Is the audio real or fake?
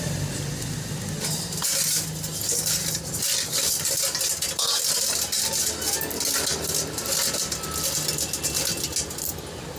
real